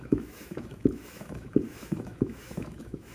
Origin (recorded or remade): remade